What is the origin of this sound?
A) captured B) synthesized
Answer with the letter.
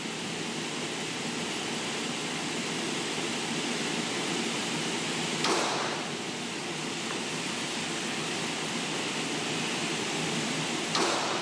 A